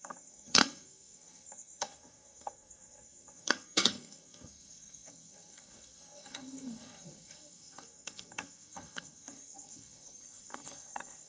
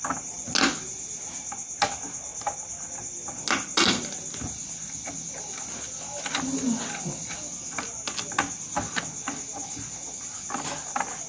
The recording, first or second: second